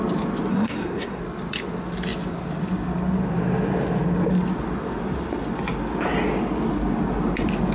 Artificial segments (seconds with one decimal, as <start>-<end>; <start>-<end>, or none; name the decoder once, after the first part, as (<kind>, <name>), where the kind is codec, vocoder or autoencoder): 0.5-1.2 (codec, SNAC)